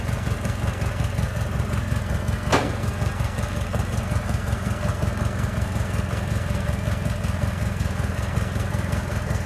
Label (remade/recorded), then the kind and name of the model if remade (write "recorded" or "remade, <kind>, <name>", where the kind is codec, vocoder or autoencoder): remade, codec, SNAC